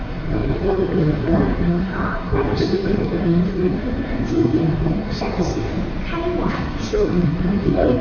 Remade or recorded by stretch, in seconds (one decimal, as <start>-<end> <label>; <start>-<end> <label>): 0.0-5.7 remade; 5.7-6.5 recorded; 6.5-8.0 remade